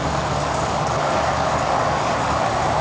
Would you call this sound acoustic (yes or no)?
no